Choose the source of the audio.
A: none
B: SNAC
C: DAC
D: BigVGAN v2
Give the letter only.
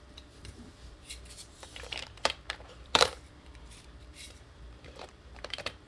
D